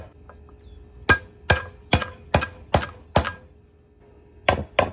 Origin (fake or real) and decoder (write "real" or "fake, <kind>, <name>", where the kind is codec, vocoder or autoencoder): real